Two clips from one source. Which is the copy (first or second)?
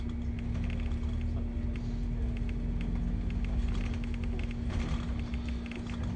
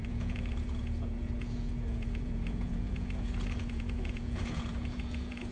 second